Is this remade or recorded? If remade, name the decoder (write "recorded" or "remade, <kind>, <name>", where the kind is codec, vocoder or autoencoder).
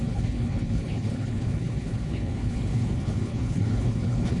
remade, codec, HILCodec